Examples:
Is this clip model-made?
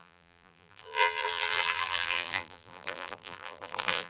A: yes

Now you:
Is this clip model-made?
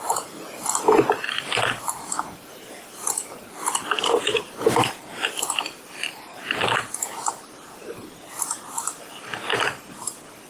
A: yes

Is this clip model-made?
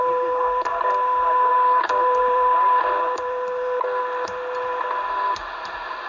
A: yes